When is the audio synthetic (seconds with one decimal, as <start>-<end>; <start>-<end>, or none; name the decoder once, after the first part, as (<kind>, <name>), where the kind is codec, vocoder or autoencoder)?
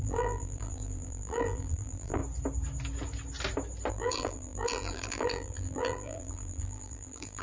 0.0-2.2 (vocoder, BigVGAN v2); 3.9-7.4